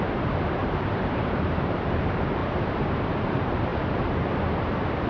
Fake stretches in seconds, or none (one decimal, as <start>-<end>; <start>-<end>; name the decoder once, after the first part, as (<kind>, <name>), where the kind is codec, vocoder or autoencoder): 0.6-2.0 (vocoder, BigVGAN v2)